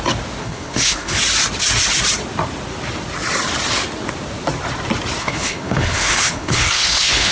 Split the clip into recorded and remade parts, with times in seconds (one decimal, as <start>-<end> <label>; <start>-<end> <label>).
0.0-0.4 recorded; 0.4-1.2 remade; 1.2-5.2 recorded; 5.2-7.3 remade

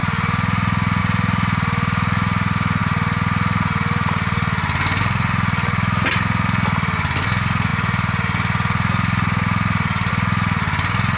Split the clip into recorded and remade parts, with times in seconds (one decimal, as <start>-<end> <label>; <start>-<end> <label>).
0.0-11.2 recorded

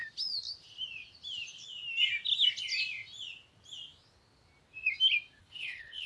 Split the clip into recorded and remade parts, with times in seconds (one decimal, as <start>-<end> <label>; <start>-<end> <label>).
0.0-5.4 recorded; 5.4-6.1 remade

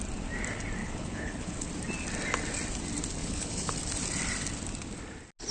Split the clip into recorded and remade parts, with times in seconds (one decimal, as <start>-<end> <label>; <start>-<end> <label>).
0.0-0.8 recorded; 0.8-1.7 remade; 1.7-3.2 recorded; 3.2-3.7 remade; 3.7-5.5 recorded

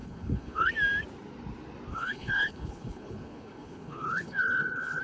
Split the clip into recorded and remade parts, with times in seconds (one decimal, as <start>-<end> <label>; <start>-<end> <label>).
0.0-0.7 remade; 0.7-1.9 recorded; 1.9-5.0 remade

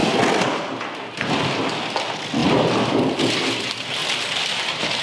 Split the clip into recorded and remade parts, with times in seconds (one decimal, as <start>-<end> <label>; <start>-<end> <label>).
0.0-5.0 recorded

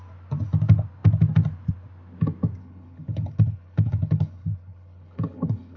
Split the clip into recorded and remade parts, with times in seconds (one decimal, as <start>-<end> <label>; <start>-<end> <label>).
0.0-2.6 recorded; 2.6-5.8 remade